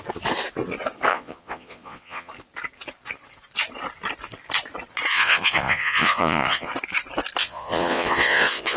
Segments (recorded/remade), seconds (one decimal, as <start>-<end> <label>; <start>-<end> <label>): 0.0-1.1 recorded; 1.1-2.3 remade; 2.3-5.1 recorded; 5.1-6.7 remade; 6.7-7.4 recorded; 7.4-8.8 remade